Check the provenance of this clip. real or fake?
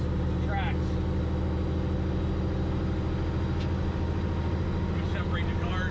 real